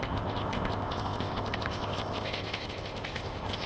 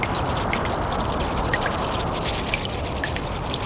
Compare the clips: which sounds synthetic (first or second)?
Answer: first